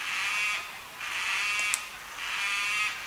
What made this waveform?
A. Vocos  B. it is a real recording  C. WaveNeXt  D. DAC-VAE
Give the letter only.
B